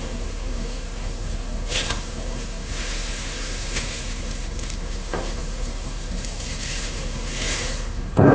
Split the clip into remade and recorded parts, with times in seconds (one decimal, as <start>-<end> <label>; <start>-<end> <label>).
0.0-8.3 remade